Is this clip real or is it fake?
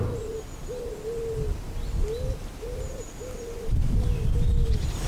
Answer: real